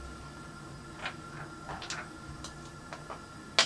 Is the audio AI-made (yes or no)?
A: no